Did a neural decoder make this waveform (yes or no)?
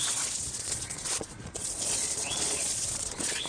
yes